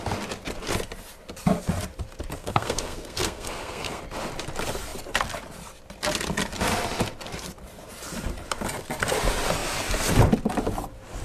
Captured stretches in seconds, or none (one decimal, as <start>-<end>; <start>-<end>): 0.0-2.4; 4.0-11.2